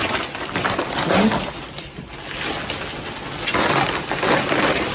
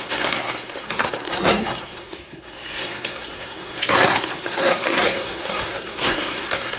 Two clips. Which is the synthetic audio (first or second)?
second